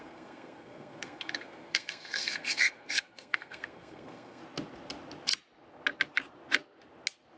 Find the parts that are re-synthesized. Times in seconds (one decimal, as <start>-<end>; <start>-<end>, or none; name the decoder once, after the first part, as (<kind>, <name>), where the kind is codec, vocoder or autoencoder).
0.0-4.4 (codec, SNAC)